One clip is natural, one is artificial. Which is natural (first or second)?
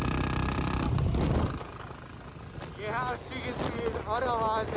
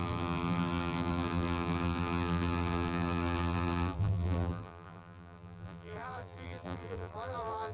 first